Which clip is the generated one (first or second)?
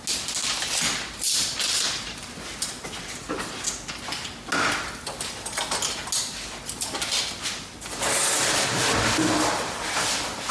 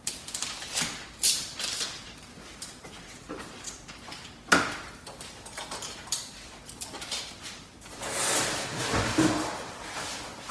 second